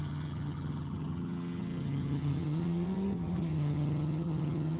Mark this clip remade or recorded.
remade